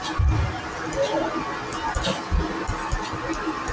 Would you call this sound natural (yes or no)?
yes